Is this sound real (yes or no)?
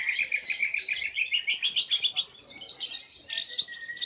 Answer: yes